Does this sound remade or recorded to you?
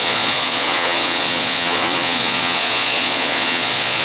remade